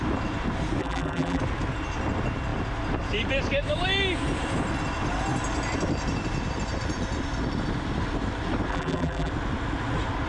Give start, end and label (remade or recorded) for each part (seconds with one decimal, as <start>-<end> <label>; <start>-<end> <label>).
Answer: 0.0-0.8 recorded; 0.8-1.4 remade; 1.4-8.7 recorded; 8.7-9.3 remade; 9.3-10.3 recorded